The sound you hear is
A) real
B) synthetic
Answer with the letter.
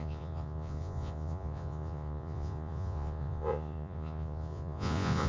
B